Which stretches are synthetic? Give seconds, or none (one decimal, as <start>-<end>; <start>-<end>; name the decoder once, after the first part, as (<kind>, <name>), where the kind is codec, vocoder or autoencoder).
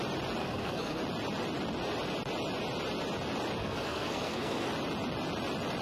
0.4-1.0 (codec, SNAC); 3.6-4.7